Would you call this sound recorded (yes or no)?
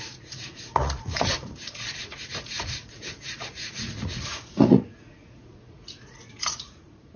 no